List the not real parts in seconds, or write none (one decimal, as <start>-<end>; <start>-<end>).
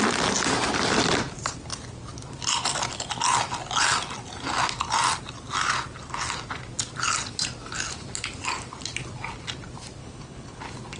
10.0-10.6